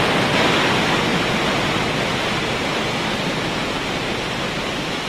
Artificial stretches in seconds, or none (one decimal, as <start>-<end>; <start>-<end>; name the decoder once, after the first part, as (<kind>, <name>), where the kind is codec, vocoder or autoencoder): 1.1-3.7 (vocoder, BigVGAN v2)